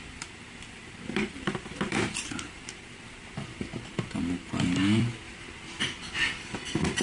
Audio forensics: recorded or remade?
remade